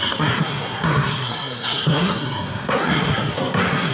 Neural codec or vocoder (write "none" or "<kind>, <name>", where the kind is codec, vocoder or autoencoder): codec, SNAC